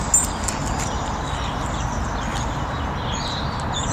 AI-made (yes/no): no